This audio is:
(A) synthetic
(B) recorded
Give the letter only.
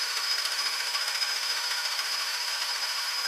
A